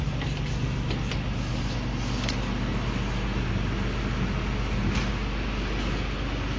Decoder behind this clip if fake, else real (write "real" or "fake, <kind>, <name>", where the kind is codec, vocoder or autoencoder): real